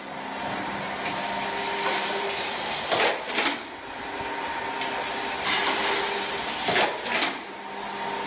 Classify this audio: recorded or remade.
recorded